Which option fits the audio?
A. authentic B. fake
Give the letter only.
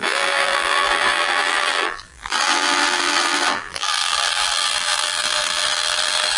B